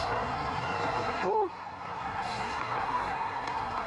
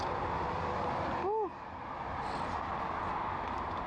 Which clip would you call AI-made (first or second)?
first